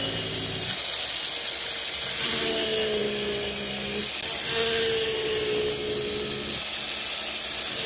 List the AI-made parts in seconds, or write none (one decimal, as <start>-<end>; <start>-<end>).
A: none